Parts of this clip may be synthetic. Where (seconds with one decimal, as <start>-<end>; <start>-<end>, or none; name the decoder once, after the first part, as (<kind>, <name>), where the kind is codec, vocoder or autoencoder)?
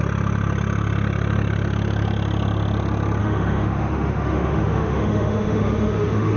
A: 3.2-6.4 (autoencoder, DAC-VAE)